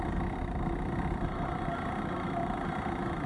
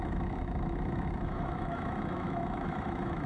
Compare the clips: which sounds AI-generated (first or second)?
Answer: second